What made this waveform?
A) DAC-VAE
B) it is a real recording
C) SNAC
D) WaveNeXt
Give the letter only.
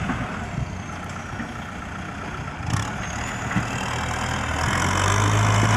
B